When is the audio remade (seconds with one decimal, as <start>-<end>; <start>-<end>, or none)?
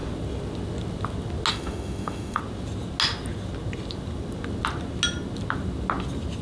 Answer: 1.5-2.4